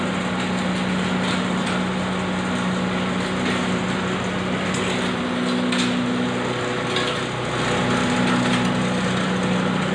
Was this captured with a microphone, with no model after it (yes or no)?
yes